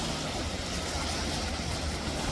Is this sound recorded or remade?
recorded